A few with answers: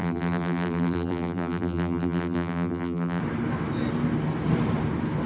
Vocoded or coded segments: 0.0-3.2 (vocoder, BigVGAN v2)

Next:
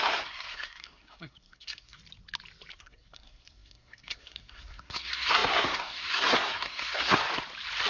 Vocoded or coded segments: 0.0-2.0 (codec, SNAC); 2.7-7.2

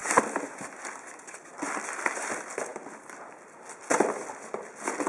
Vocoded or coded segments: none